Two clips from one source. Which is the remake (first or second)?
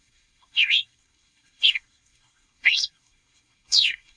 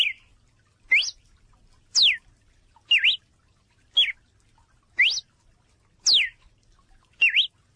first